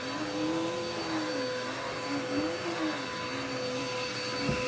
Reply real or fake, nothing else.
real